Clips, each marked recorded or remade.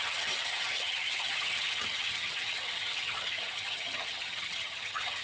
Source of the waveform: remade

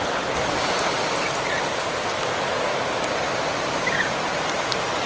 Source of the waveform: recorded